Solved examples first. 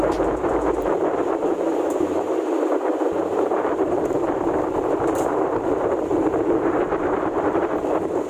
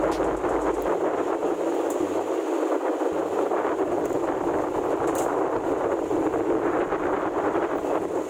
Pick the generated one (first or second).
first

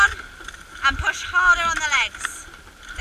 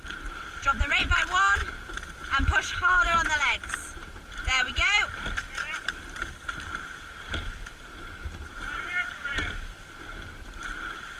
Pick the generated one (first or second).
second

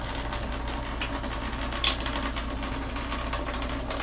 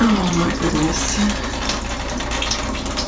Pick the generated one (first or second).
second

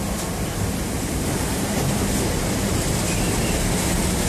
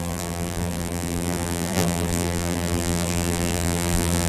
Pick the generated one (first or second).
second